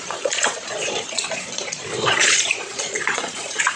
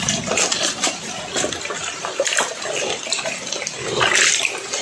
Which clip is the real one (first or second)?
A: second